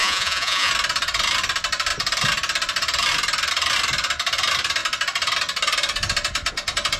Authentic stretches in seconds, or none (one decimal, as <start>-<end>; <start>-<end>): 0.7-7.0